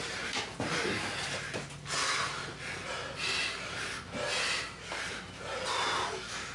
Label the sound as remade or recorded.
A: recorded